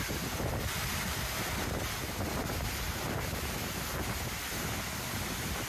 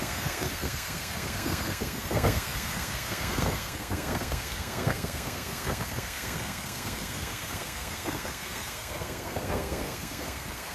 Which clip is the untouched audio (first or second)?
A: first